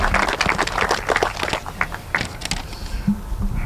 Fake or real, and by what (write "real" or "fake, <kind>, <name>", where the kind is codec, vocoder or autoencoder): real